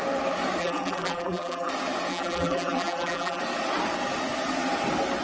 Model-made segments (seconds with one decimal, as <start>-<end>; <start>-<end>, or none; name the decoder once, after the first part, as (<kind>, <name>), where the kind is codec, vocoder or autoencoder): 0.6-1.7 (vocoder, BigVGAN v2); 2.1-3.4